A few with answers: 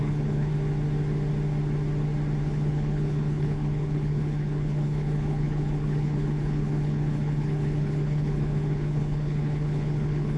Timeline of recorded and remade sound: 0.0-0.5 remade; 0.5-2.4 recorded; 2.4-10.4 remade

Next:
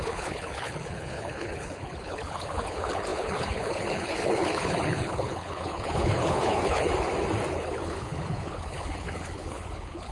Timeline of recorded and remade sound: 0.0-6.9 remade; 6.9-7.5 recorded; 7.5-10.1 remade

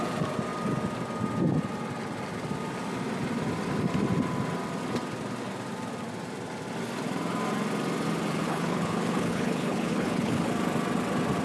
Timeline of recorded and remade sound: 0.0-8.4 recorded; 8.4-10.5 remade; 10.5-11.4 recorded